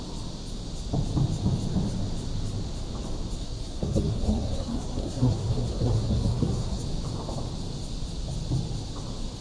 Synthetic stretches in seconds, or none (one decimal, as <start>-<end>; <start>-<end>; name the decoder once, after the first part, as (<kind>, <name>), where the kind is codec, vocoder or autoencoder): 3.4-6.8 (codec, SNAC)